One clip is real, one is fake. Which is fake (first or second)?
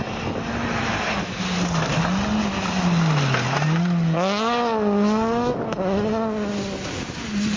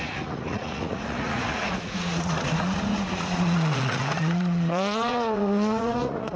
second